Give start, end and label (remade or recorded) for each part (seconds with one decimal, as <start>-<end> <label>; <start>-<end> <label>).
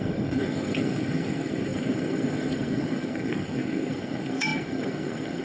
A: 0.0-5.4 remade